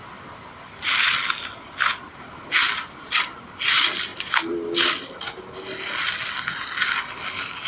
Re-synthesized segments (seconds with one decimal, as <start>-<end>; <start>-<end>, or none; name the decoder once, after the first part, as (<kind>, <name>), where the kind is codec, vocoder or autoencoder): 4.1-6.0 (vocoder, BigVGAN v2)